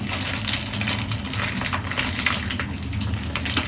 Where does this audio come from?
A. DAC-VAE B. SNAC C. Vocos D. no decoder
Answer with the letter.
D